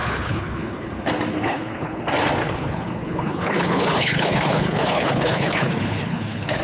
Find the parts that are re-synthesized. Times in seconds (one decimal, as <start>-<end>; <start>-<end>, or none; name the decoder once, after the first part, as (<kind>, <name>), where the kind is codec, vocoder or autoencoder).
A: 0.0-0.9 (codec, HILCodec); 1.3-2.0; 2.4-6.6